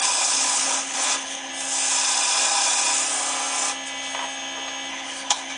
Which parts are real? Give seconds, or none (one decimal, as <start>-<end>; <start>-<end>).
1.5-4.9